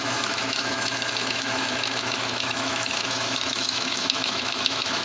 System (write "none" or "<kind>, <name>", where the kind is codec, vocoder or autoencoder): autoencoder, DAC-VAE